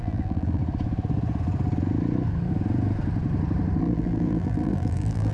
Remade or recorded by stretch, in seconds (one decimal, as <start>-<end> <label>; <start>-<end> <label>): 0.0-0.6 remade; 0.6-3.8 recorded; 3.8-5.3 remade